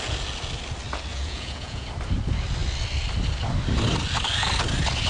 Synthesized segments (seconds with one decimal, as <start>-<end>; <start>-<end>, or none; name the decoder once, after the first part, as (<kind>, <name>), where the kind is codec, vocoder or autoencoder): 1.1-1.9 (vocoder, Vocos)